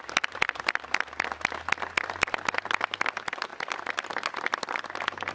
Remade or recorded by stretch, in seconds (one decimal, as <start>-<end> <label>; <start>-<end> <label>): 0.0-3.5 recorded; 3.5-4.8 remade; 4.8-5.3 recorded